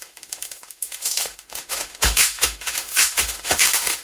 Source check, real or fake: fake